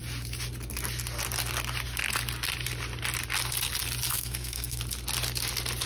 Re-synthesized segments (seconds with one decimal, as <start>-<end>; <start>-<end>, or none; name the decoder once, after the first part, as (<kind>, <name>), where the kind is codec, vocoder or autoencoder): 4.1-4.8 (codec, SNAC)